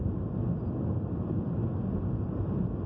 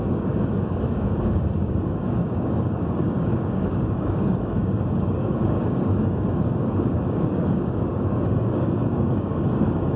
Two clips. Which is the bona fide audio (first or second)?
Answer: first